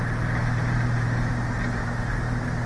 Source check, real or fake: real